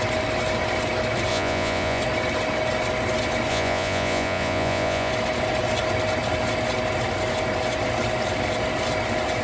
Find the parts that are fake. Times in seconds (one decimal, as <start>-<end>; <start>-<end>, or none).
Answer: 1.3-2.0; 3.5-5.1